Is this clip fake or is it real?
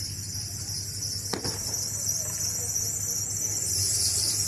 real